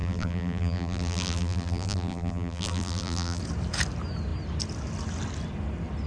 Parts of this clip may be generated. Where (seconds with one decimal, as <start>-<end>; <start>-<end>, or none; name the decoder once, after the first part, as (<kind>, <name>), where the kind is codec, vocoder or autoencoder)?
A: 0.0-3.4 (vocoder, BigVGAN v2)